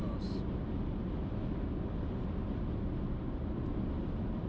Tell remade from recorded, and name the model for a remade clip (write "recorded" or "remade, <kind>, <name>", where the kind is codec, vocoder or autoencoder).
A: recorded